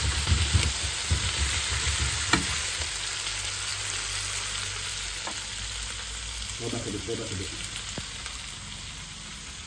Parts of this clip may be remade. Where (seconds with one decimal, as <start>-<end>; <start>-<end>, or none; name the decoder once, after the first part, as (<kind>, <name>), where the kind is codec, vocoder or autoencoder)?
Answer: none